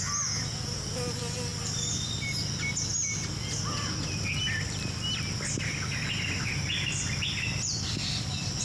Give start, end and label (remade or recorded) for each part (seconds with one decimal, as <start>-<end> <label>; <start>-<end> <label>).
0.0-8.6 recorded